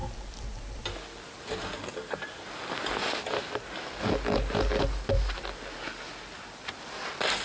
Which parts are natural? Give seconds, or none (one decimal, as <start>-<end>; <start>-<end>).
0.0-7.4